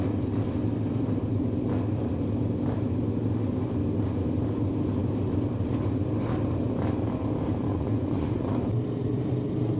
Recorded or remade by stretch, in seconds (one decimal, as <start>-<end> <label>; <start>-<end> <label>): 0.0-7.7 recorded; 7.7-8.7 remade; 8.7-9.8 recorded